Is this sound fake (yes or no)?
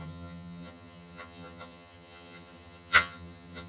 yes